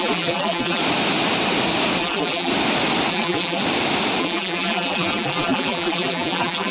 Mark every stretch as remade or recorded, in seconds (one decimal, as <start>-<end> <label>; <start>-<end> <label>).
0.0-0.8 remade; 0.8-2.0 recorded; 2.0-2.5 remade; 2.5-3.1 recorded; 3.1-3.6 remade; 3.6-4.2 recorded; 4.2-6.7 remade